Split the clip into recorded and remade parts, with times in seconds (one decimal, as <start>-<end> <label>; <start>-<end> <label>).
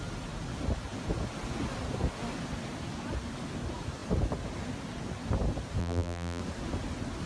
0.0-5.8 recorded; 5.8-6.4 remade; 6.4-7.3 recorded